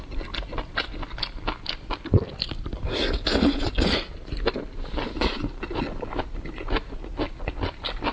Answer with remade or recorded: recorded